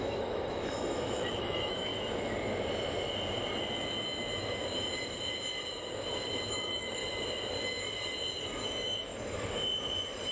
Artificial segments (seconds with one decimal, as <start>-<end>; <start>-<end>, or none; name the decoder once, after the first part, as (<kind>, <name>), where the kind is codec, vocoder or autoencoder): 0.0-1.9 (autoencoder, DAC-VAE); 6.5-7.0; 8.4-9.1